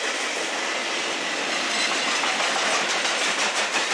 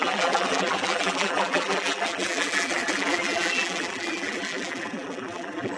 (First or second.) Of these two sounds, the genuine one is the first